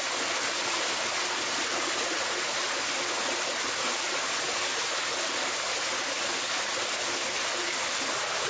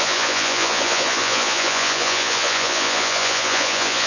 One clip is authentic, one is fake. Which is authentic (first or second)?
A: first